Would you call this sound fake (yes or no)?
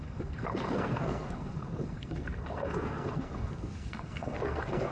yes